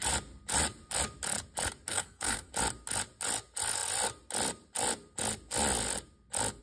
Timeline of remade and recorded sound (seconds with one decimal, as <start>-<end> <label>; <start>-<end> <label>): 0.0-1.9 recorded; 1.9-2.5 remade; 2.5-6.6 recorded